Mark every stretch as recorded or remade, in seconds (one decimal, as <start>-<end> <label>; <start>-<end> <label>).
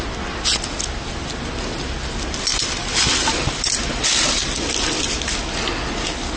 0.0-2.5 recorded; 2.5-5.3 remade; 5.3-6.4 recorded